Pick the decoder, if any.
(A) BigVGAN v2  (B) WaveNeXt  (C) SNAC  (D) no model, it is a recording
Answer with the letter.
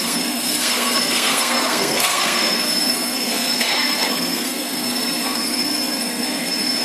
C